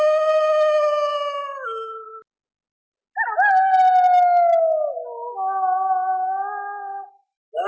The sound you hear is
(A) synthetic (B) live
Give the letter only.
B